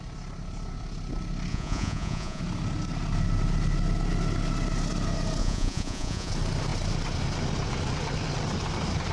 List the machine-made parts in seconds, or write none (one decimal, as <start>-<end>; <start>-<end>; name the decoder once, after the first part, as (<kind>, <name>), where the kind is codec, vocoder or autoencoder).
1.5-2.4 (vocoder, Vocos); 5.4-6.3